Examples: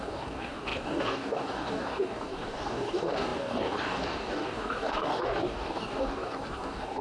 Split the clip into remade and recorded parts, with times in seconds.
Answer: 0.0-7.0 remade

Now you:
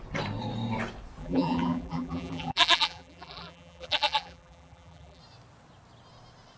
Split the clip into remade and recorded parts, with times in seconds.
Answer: 0.0-1.2 recorded; 1.2-5.2 remade; 5.2-6.6 recorded

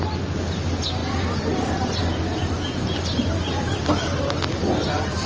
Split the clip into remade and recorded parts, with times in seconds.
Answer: 0.0-5.3 recorded